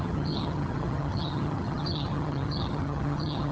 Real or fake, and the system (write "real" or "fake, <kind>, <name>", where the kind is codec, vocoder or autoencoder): fake, vocoder, HiFi-GAN